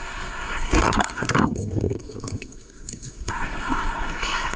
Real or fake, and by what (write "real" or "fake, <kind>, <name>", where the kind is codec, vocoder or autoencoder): fake, codec, SNAC